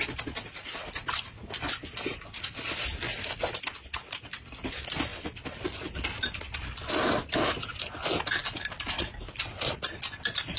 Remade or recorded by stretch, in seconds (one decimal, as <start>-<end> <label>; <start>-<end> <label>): 0.0-10.6 recorded